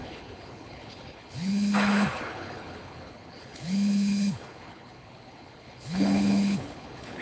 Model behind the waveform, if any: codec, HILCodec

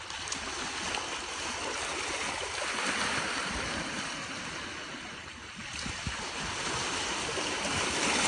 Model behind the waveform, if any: none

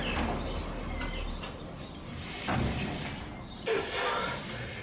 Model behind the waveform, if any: none